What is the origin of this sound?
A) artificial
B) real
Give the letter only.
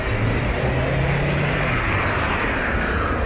B